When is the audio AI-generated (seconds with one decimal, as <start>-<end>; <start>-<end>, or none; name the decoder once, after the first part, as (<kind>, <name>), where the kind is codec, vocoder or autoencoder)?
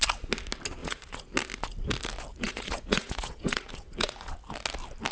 0.8-1.3 (vocoder, Vocos); 2.3-4.3